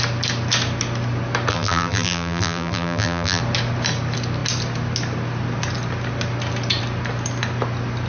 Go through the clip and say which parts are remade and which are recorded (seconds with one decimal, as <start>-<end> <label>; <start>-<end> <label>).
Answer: 0.0-1.5 recorded; 1.5-3.4 remade; 3.4-8.1 recorded